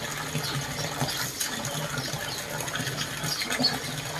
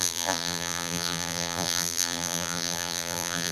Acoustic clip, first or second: first